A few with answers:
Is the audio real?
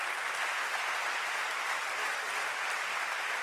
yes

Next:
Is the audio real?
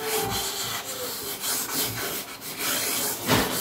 yes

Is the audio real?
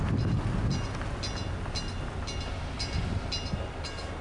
yes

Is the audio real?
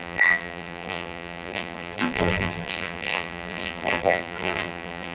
no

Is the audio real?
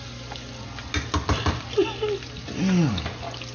yes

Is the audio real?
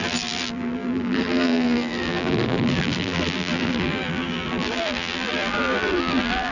no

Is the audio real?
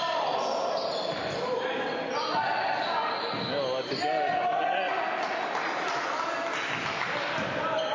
yes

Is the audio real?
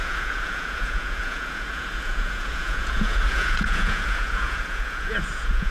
no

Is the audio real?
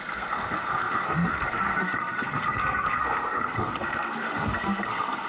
no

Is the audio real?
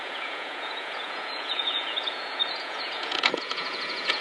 no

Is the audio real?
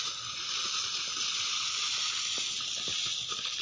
yes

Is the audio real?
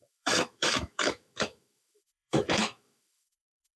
no